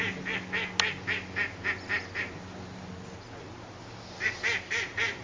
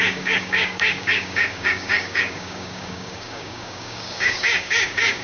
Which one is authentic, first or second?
first